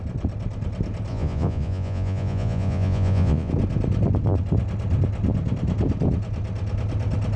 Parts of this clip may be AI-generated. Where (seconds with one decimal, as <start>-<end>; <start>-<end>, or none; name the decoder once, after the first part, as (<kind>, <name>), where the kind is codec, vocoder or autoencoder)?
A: 1.1-3.5 (vocoder, Vocos)